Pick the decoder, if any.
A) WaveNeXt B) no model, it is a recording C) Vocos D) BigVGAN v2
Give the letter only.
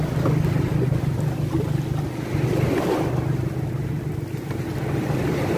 B